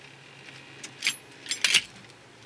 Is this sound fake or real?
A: real